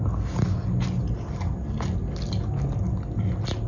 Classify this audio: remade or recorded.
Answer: recorded